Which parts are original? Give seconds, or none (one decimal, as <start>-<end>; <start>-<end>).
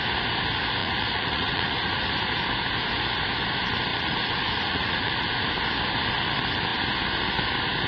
0.0-0.8; 2.1-3.9; 5.1-7.9